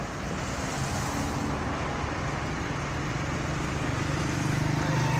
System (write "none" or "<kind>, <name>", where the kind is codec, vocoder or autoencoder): none